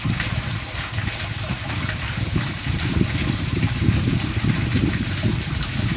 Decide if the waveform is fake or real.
fake